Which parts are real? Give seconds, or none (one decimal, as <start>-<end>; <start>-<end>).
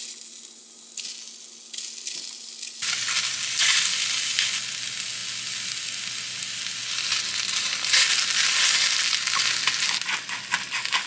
0.0-11.1